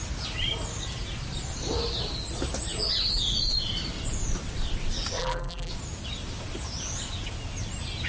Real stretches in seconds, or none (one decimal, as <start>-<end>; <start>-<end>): 0.0-5.2; 5.7-8.1